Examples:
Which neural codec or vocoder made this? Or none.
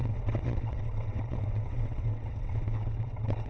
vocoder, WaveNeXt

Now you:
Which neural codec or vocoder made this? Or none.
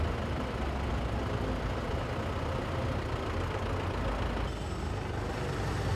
none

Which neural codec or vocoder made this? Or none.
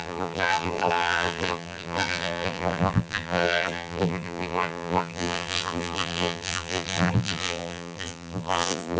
vocoder, BigVGAN v2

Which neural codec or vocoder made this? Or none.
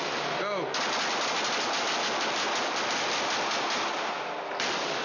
none